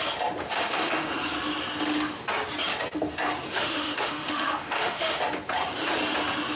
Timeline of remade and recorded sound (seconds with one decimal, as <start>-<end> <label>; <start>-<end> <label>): 0.0-0.5 recorded; 0.5-1.1 remade; 1.1-3.5 recorded; 3.5-5.2 remade; 5.2-6.6 recorded